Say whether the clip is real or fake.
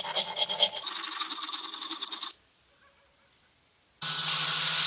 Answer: real